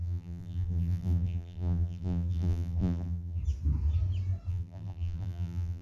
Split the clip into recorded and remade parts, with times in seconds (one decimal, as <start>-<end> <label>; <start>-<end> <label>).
0.0-3.4 remade; 3.4-4.5 recorded; 4.5-5.8 remade